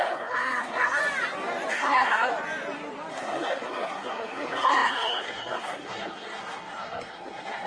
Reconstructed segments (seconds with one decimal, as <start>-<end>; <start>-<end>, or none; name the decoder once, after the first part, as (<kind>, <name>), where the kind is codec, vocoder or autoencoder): 0.0-1.0 (codec, SNAC); 1.7-2.3; 3.1-7.7